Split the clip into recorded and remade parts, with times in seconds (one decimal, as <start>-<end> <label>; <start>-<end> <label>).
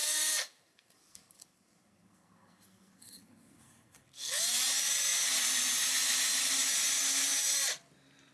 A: 0.0-4.4 remade; 4.4-8.3 recorded